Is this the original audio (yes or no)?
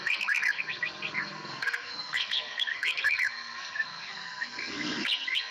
no